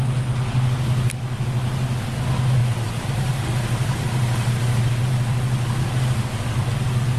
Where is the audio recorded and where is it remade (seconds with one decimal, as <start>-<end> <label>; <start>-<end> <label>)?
0.0-2.6 recorded; 2.6-5.1 remade; 5.1-7.2 recorded

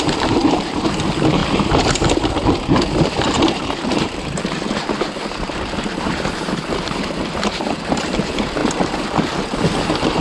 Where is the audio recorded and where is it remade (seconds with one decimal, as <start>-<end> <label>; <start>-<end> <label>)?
0.0-10.2 remade

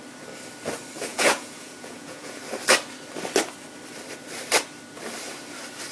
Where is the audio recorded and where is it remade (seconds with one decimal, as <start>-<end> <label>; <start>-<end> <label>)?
0.0-1.1 recorded; 1.1-2.4 remade; 2.4-5.9 recorded

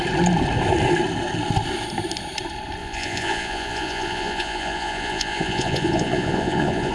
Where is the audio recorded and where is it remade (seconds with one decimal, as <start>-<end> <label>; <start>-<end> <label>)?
0.0-2.8 recorded; 2.8-6.9 remade

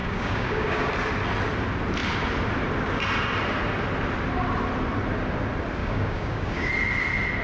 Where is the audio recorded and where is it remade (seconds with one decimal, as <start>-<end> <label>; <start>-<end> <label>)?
0.0-0.9 remade; 0.9-5.8 recorded; 5.8-6.7 remade; 6.7-7.4 recorded

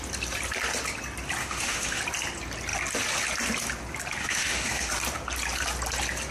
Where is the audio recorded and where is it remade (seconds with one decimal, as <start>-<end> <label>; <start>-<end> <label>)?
0.0-1.4 recorded; 1.4-2.0 remade; 2.0-4.2 recorded; 4.2-4.9 remade; 4.9-6.3 recorded

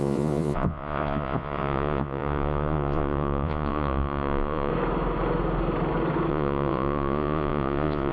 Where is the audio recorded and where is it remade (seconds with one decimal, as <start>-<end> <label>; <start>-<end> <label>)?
0.0-4.7 remade; 4.7-6.3 recorded; 6.3-8.1 remade